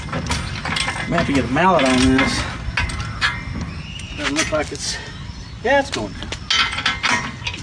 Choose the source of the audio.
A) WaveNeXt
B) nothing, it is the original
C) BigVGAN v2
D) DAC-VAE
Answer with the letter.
B